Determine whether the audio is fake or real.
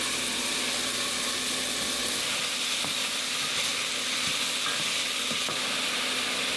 real